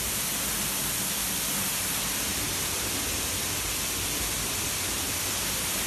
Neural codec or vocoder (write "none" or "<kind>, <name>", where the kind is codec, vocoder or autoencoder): none